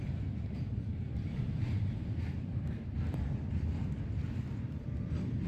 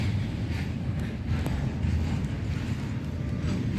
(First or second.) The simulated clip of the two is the first